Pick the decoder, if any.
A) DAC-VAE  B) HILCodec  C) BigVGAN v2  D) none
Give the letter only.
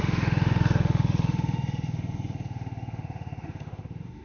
A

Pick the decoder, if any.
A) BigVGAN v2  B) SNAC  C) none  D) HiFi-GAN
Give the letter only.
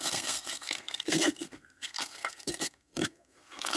B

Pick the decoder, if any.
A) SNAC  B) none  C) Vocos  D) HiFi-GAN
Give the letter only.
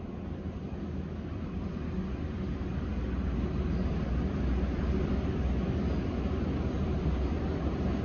B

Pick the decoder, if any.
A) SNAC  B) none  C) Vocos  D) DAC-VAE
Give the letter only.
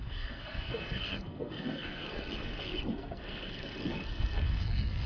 A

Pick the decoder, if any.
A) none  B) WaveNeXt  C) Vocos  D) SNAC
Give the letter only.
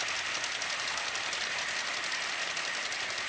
A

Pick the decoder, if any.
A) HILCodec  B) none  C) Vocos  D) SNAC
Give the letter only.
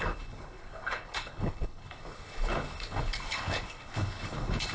A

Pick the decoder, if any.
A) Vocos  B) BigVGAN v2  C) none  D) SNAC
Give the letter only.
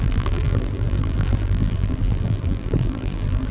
B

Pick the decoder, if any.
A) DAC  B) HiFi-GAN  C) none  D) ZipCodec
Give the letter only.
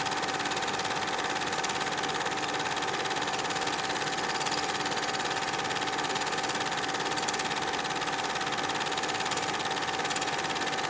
C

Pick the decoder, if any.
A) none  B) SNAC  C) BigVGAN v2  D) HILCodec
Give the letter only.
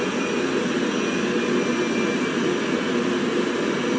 A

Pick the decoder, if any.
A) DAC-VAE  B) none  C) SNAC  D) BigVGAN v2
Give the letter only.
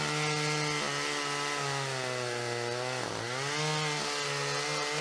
B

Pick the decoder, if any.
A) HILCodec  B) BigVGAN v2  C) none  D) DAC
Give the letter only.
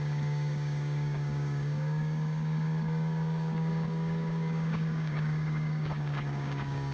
D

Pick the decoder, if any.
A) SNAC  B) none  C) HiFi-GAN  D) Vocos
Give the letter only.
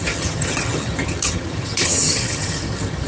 C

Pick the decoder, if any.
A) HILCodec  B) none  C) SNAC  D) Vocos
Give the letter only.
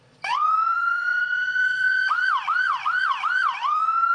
D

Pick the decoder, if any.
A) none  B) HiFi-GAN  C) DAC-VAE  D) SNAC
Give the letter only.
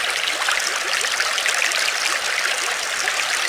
A